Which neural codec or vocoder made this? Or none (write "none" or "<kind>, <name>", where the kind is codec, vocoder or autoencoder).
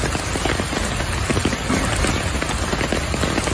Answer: none